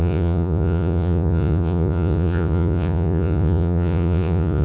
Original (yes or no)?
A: no